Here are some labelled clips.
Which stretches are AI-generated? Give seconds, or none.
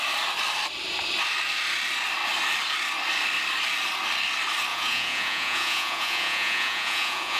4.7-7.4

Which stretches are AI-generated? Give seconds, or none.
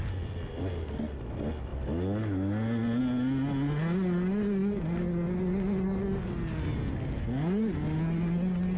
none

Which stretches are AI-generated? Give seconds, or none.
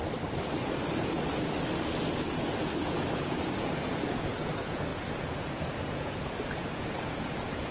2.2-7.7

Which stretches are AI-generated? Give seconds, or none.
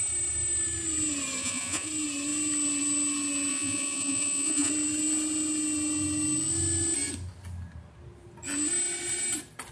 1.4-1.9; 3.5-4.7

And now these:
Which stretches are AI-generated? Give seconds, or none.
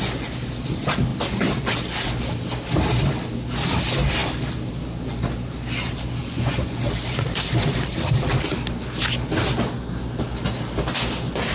6.2-6.8